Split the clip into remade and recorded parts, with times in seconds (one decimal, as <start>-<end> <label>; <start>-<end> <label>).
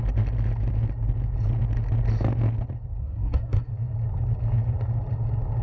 0.0-3.0 recorded; 3.0-3.7 remade; 3.7-5.6 recorded